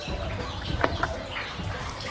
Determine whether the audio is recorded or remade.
remade